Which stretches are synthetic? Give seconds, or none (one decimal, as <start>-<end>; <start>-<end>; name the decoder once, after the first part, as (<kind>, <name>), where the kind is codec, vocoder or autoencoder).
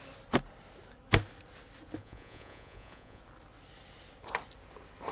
2.0-3.2 (vocoder, Vocos)